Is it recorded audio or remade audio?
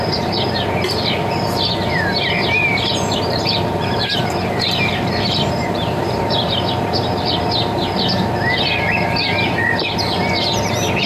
remade